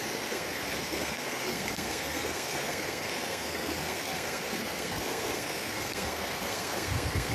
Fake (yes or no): yes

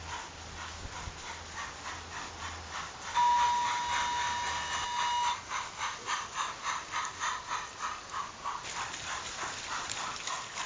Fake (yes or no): no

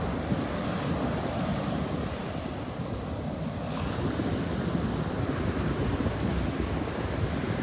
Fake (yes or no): no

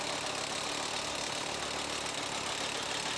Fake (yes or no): no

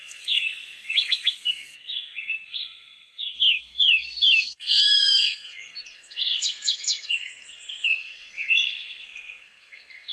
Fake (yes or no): yes